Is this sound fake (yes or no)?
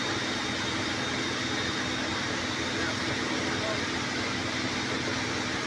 no